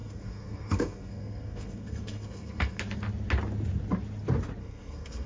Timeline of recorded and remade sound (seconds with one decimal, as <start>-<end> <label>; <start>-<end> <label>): 0.0-2.8 remade; 2.8-4.6 recorded; 4.6-5.3 remade